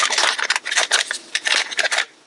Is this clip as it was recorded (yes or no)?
yes